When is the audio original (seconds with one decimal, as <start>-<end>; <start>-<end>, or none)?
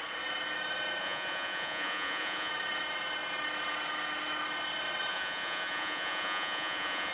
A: 0.0-1.0; 2.5-5.1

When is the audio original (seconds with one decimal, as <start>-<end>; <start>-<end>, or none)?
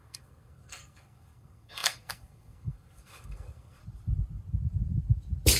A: 3.8-5.6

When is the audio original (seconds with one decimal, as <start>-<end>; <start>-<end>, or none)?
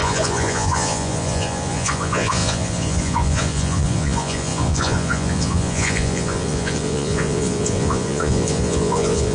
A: none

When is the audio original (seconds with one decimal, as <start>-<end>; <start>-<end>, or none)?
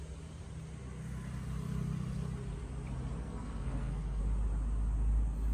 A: 0.0-3.2; 4.2-5.5